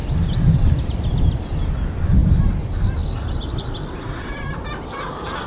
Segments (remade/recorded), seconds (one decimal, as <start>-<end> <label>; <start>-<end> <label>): 0.0-5.5 recorded